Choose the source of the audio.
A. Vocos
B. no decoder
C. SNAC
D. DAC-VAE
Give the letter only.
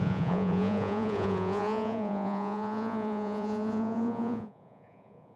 A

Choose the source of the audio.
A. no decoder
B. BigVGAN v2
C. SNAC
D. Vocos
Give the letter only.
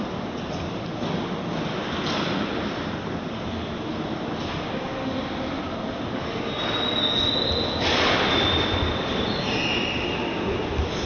A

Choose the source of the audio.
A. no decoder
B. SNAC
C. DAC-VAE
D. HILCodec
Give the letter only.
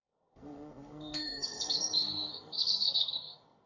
B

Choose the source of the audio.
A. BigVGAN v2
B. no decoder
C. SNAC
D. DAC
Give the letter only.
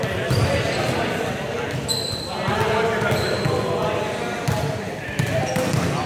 B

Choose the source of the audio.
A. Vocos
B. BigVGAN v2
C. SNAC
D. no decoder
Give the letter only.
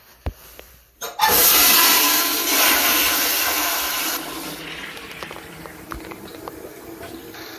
B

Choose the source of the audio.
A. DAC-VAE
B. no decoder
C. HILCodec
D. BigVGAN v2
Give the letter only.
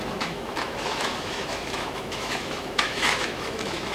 A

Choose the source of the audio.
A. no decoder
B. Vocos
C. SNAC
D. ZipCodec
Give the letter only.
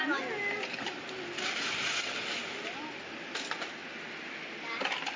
A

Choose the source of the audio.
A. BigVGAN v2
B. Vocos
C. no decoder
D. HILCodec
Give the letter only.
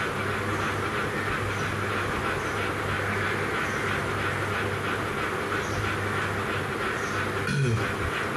C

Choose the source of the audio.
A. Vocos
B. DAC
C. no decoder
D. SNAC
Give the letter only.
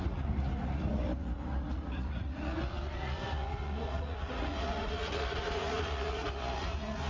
A